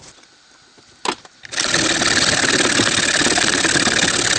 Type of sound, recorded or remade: recorded